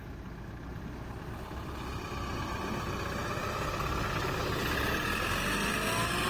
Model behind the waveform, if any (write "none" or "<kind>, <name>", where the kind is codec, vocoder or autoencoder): none